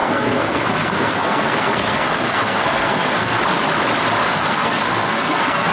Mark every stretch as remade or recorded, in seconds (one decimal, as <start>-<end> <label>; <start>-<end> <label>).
0.0-3.4 remade; 3.4-4.2 recorded; 4.2-5.7 remade